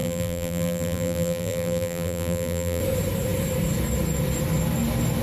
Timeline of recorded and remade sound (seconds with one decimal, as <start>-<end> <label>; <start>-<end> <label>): 0.0-2.8 remade; 2.8-5.2 recorded